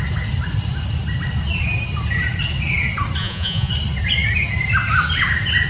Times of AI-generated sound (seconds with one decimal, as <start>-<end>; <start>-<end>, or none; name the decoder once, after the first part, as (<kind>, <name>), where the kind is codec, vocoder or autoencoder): 3.2-3.7 (vocoder, Vocos)